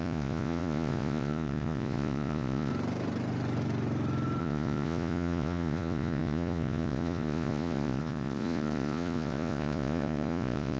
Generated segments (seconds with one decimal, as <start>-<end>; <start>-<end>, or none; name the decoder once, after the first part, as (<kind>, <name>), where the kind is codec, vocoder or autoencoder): 0.0-2.7 (vocoder, Vocos); 4.4-10.8

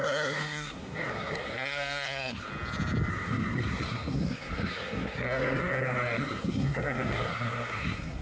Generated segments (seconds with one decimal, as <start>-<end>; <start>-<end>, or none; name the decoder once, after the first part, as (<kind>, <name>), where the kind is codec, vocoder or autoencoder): 0.0-2.5 (codec, SNAC); 3.1-8.2

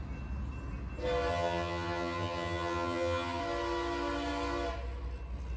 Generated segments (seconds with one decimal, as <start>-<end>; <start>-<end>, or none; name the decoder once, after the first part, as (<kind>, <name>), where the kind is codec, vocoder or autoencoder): 1.3-3.4 (vocoder, HiFi-GAN)

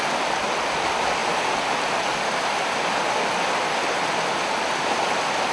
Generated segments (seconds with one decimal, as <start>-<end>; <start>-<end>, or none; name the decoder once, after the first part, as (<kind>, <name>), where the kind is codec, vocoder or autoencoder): none

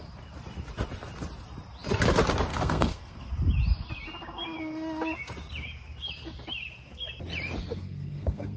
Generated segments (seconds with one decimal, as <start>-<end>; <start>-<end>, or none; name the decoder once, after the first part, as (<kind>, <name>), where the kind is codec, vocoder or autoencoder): 2.5-3.3 (codec, SNAC); 7.7-8.6